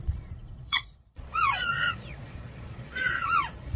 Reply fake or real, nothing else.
fake